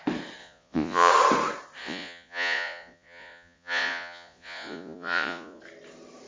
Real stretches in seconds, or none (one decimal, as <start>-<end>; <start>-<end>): 0.0-0.4; 1.1-1.8; 5.6-6.3